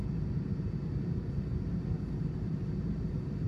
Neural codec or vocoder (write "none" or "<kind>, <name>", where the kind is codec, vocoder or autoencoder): none